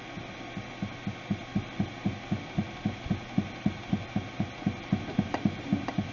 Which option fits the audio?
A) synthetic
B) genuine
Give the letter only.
B